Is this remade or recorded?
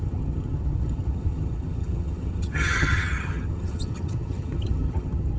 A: remade